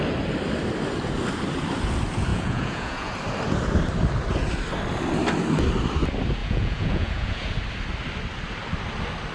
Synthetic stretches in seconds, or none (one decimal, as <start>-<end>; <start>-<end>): 2.3-3.1; 6.4-7.5